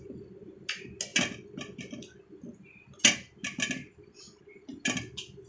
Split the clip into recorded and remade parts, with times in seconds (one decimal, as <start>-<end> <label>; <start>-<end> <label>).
0.0-5.5 recorded